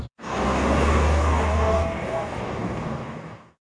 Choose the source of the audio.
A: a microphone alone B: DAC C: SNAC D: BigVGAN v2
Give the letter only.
B